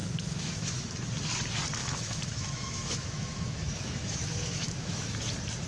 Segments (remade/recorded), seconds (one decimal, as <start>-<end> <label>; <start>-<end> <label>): 0.0-0.9 remade; 0.9-1.8 recorded; 1.8-5.2 remade; 5.2-5.7 recorded